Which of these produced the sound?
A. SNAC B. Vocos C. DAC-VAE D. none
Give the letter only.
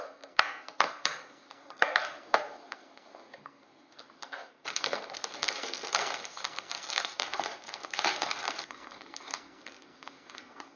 A